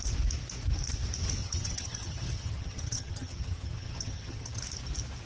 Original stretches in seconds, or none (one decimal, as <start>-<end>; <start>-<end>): 0.0-1.4; 4.6-5.3